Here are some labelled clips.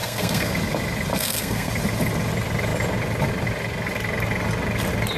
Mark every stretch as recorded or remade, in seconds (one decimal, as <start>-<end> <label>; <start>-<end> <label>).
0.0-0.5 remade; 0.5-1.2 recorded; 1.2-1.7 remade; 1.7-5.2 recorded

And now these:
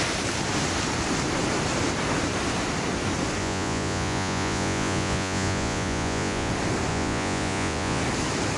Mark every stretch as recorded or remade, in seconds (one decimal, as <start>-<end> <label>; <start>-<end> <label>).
0.0-3.4 recorded; 3.4-6.5 remade; 6.5-6.9 recorded; 6.9-8.0 remade; 8.0-8.6 recorded

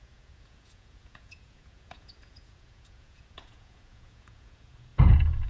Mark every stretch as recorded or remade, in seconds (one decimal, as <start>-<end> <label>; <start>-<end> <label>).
0.0-5.5 remade

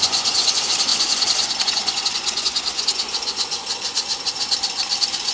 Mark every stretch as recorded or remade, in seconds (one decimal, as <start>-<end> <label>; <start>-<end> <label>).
0.0-4.1 remade; 4.1-5.3 recorded